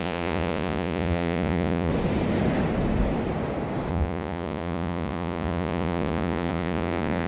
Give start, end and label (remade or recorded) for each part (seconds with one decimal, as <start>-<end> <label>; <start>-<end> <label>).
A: 0.0-1.9 remade; 1.9-3.9 recorded; 3.9-7.3 remade